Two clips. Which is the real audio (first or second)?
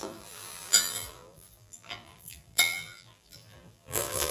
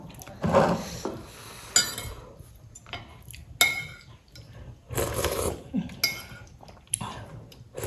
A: second